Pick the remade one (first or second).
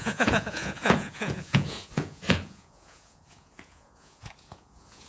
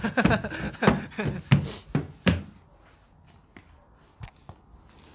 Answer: first